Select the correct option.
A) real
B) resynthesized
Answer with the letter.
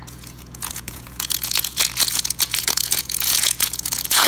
B